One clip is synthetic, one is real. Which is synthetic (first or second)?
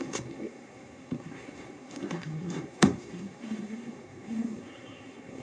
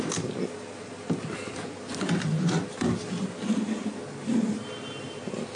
first